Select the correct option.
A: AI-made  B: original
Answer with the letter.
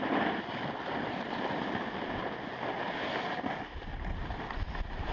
B